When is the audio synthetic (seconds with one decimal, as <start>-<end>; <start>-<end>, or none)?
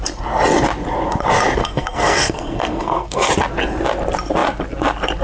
1.6-3.3